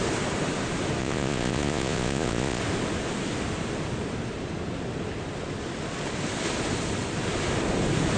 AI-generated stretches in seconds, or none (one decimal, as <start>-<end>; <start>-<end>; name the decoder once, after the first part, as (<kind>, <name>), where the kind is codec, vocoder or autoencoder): 1.0-2.6 (vocoder, Vocos)